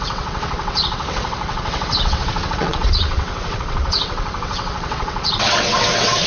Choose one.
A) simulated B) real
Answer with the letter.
A